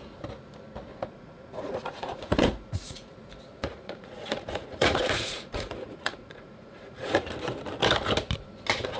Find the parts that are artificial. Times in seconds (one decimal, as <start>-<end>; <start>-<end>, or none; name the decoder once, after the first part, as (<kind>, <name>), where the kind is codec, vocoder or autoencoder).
0.9-3.1 (vocoder, Vocos); 3.5-7.3